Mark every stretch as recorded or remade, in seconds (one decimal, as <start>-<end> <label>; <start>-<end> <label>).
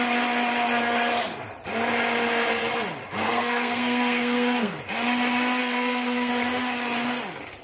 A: 0.0-3.2 recorded; 3.2-4.8 remade; 4.8-5.6 recorded; 5.6-6.3 remade; 6.3-7.6 recorded